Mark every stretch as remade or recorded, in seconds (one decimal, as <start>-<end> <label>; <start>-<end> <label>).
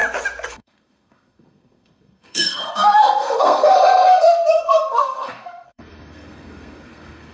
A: 0.0-0.5 recorded; 0.5-7.3 remade